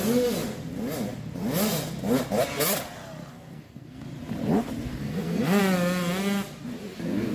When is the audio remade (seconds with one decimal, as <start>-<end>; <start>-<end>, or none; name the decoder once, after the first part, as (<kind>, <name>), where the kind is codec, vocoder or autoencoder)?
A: 3.3-4.0 (codec, SNAC); 4.9-5.6